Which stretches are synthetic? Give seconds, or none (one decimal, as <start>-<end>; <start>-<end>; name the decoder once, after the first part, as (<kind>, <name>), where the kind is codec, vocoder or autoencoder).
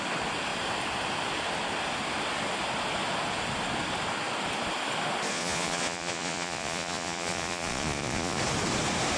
5.3-8.4 (vocoder, Vocos)